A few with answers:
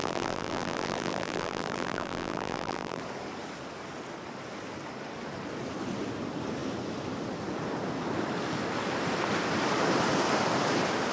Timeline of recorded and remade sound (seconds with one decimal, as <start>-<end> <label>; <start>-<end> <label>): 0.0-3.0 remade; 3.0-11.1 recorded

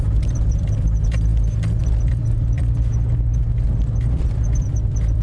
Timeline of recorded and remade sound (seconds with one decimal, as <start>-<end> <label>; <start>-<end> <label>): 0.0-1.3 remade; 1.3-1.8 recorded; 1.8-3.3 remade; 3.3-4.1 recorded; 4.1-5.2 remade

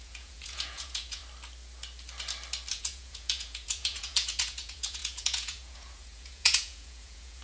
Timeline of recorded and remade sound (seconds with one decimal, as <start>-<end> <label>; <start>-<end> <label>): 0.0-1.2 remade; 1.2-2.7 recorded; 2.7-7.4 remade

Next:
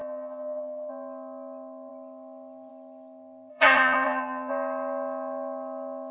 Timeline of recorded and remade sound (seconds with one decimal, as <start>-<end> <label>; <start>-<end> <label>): 0.0-0.9 remade; 0.9-3.5 recorded; 3.5-4.5 remade; 4.5-6.1 recorded

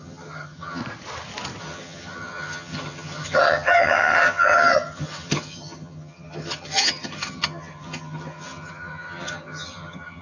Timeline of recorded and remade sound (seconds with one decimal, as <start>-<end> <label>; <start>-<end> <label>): 0.0-0.8 remade; 0.8-1.6 recorded; 1.6-10.2 remade